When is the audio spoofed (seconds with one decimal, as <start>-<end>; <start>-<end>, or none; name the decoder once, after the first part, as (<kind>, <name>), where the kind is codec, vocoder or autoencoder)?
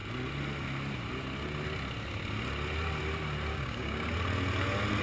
3.5-4.1 (codec, DAC)